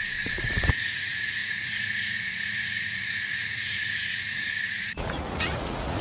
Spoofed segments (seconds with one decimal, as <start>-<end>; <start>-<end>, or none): 0.0-6.0